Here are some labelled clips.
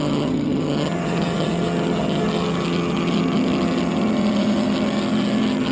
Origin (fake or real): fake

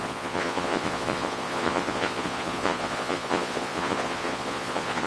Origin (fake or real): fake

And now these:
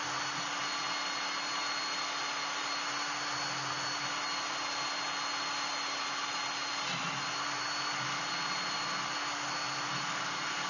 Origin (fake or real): real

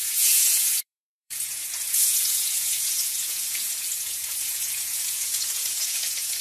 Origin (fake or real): fake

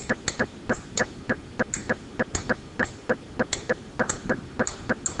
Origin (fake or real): real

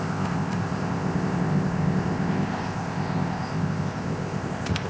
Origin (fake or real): fake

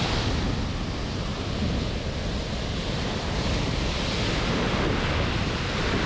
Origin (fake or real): real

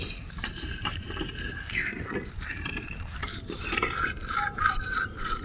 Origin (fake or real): fake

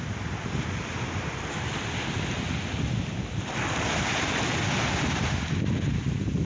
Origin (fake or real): real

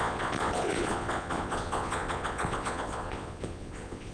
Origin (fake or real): fake